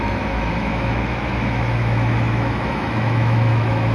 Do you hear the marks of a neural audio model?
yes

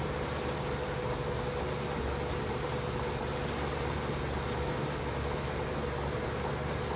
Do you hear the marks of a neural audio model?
no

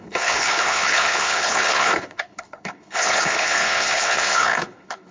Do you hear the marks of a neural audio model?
yes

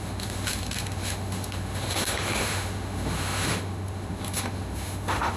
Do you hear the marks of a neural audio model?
yes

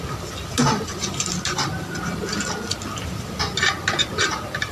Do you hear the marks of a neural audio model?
no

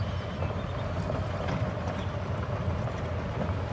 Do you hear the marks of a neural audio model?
no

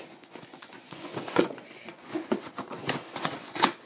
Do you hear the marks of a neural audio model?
yes